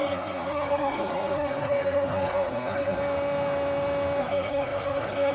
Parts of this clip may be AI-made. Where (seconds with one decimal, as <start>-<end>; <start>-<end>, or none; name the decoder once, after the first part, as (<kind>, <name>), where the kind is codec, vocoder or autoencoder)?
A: 0.0-3.0 (codec, SNAC); 4.2-5.3